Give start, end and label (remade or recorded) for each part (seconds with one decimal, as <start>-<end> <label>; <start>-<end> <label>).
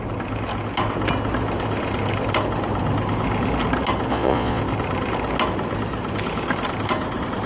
0.0-4.1 recorded; 4.1-4.6 remade; 4.6-7.5 recorded